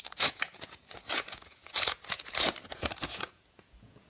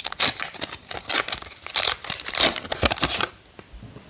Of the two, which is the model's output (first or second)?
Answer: first